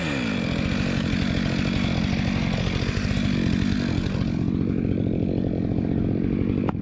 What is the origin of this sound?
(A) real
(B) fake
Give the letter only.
A